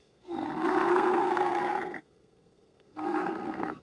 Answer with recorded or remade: remade